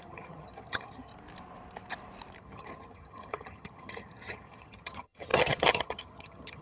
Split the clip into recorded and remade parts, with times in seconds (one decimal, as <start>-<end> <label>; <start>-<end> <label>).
0.0-1.1 remade; 1.1-2.4 recorded; 2.4-6.6 remade